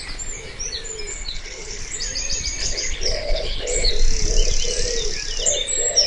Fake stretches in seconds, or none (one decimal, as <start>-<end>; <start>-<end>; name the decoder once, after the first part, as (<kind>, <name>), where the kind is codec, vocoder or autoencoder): 1.1-1.8 (codec, HILCodec); 2.6-3.9